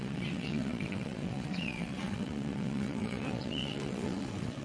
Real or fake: fake